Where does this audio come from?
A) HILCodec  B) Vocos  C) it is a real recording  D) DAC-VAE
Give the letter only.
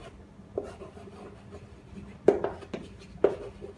C